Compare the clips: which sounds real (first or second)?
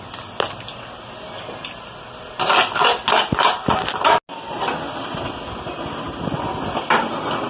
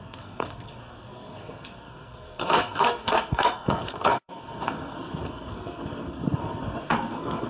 first